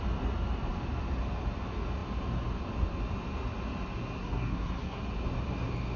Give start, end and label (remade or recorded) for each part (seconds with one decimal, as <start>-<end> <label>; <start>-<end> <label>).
0.0-4.2 recorded; 4.2-5.0 remade; 5.0-6.0 recorded